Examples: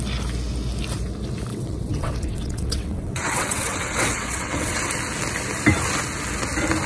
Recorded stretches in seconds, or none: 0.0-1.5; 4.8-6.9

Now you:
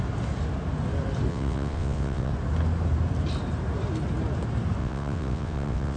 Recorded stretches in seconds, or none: 0.0-1.3; 2.3-4.8

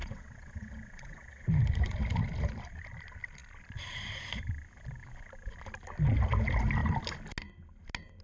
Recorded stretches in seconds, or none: 1.5-8.2

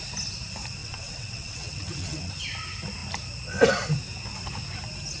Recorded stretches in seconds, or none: 0.0-0.8; 2.3-5.2

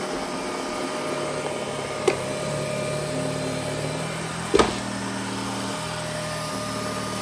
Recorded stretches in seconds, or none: 0.0-7.2